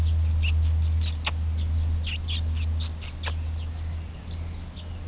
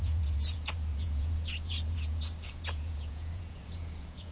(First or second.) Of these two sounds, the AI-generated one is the second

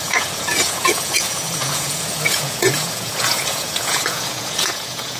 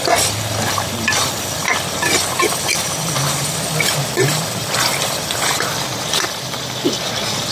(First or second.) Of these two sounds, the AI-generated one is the first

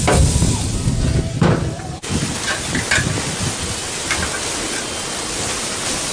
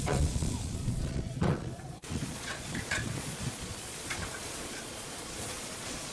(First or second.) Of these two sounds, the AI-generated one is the second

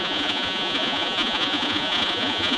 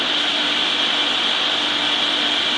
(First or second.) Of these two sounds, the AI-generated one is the first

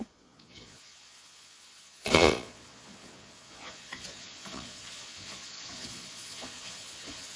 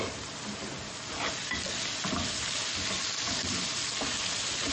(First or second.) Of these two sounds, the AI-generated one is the first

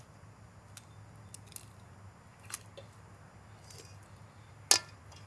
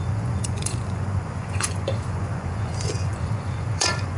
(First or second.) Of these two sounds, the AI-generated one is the second